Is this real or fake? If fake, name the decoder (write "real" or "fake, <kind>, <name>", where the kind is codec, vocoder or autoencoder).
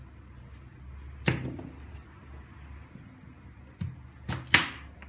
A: real